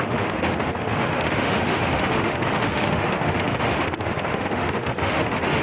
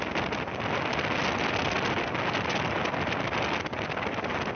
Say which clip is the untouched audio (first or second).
second